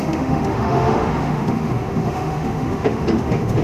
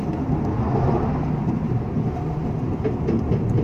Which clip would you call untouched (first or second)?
second